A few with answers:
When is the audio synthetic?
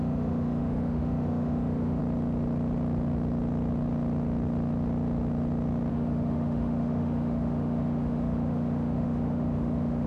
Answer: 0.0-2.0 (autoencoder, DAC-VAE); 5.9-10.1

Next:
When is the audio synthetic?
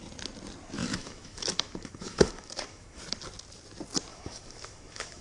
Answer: 0.8-3.0 (autoencoder, DAC-VAE); 4.1-5.2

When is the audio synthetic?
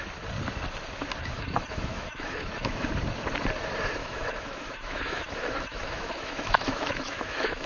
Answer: 1.2-2.9 (autoencoder, DAC-VAE); 4.0-7.7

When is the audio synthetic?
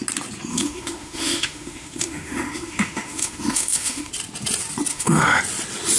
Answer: 0.5-4.1 (autoencoder, DAC-VAE); 4.9-5.4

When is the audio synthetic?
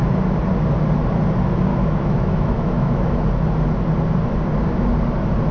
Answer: 1.7-3.2 (autoencoder, DAC-VAE)